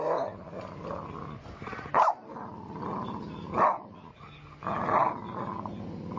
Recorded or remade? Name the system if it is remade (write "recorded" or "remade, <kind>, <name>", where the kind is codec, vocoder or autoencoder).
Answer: recorded